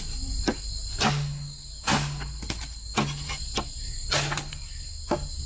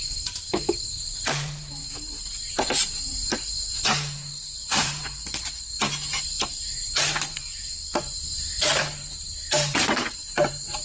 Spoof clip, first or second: second